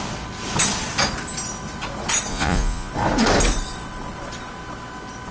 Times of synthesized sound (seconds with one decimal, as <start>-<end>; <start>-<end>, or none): 2.3-2.9